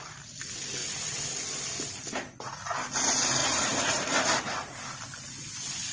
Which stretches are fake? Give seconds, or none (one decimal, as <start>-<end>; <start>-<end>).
3.4-5.0